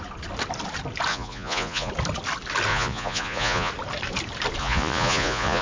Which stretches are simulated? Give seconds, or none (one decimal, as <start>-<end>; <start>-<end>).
1.1-1.9; 2.7-3.7; 4.6-5.6